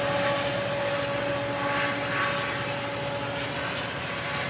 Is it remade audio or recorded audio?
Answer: recorded